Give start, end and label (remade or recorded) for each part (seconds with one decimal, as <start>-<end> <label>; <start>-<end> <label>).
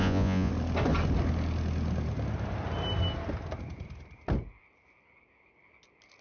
0.0-0.5 remade; 0.5-6.2 recorded